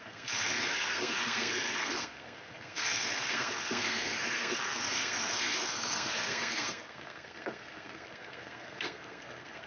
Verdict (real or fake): fake